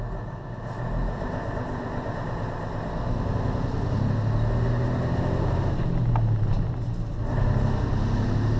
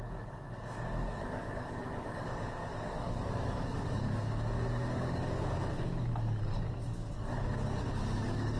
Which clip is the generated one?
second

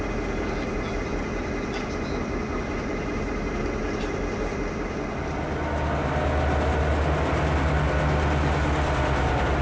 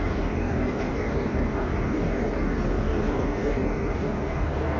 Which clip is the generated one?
second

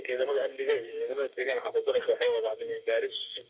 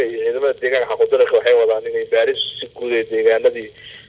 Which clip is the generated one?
first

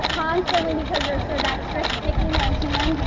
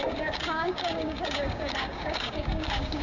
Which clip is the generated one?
second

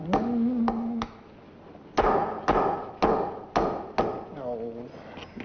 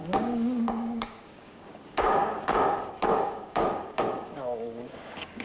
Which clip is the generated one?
second